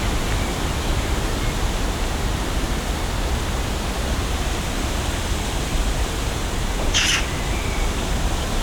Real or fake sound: real